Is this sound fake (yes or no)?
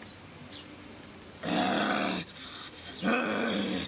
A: no